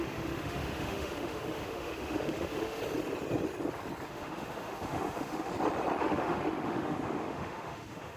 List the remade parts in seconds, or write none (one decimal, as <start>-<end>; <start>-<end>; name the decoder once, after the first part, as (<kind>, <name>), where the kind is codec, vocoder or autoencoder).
0.0-2.8 (autoencoder, DAC-VAE); 4.1-5.5; 6.0-8.2